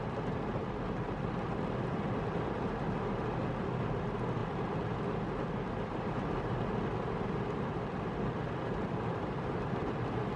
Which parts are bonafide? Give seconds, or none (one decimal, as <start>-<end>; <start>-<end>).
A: 0.0-10.4